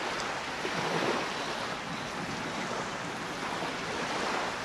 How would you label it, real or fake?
real